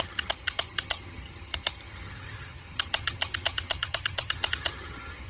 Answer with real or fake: fake